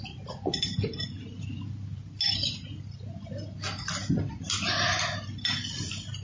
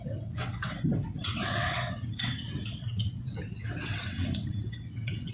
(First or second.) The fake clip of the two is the second